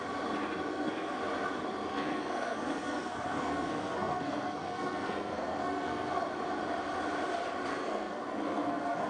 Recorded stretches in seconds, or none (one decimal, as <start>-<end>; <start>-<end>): 0.0-0.7; 1.2-1.9; 6.2-7.7